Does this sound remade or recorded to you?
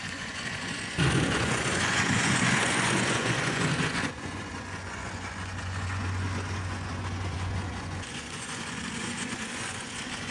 remade